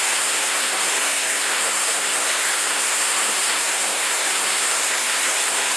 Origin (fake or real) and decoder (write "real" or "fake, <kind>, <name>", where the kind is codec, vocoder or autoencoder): fake, codec, SNAC